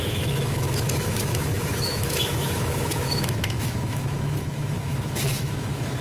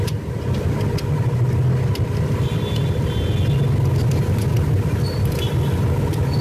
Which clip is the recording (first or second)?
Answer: second